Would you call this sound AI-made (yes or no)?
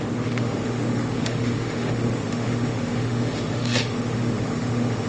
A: yes